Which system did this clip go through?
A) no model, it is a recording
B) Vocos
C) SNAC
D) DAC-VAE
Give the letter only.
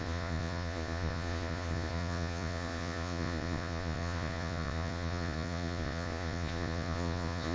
B